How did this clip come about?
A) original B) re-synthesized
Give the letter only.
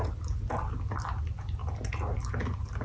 A